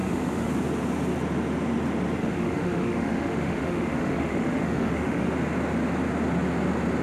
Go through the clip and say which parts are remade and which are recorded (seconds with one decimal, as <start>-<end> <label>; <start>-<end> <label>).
0.0-0.5 remade; 0.5-2.2 recorded; 2.2-5.3 remade; 5.3-7.0 recorded